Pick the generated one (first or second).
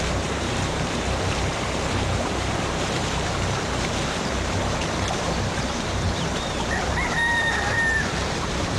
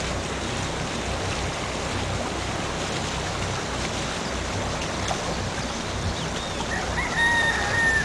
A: first